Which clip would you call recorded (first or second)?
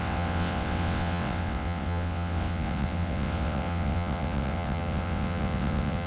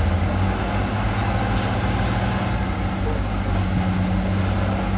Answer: second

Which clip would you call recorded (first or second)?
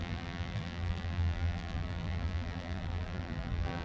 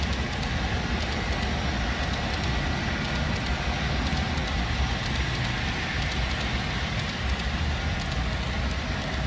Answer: second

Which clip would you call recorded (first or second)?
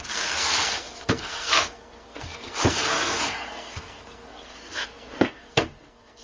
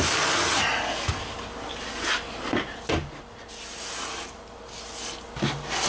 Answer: second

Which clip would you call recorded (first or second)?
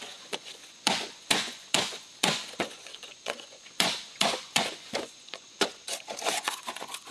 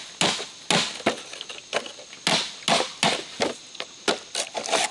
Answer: second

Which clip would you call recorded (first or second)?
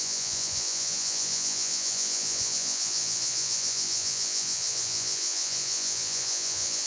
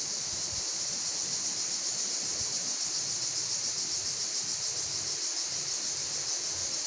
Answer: second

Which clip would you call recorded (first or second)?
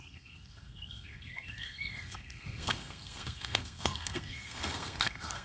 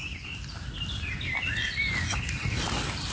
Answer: second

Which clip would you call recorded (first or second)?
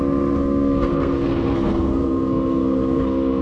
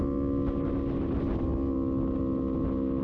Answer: second